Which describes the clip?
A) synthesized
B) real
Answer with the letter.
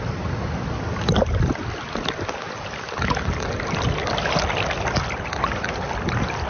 B